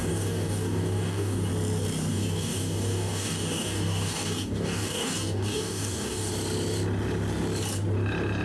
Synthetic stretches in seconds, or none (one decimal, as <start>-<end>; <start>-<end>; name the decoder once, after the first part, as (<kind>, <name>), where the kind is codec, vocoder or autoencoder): 0.0-1.5 (codec, DAC); 2.1-6.3